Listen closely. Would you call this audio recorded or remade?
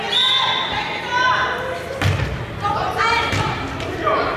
recorded